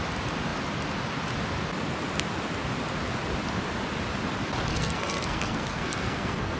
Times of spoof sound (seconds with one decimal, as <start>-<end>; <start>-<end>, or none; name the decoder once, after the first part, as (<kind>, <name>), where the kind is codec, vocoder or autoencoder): 4.7-6.6 (codec, SNAC)